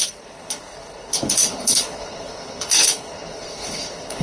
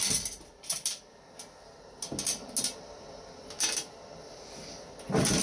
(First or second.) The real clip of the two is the second